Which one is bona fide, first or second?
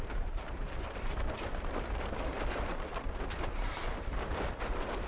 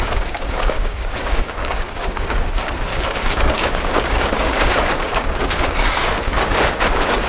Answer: first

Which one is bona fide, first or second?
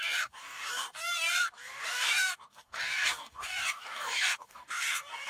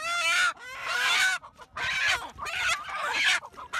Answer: second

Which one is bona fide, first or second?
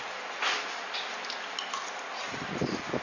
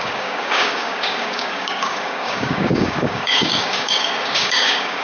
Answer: first